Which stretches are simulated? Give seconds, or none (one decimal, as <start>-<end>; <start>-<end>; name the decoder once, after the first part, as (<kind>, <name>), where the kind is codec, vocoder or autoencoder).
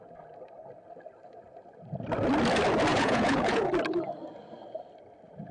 2.9-3.7 (vocoder, Vocos)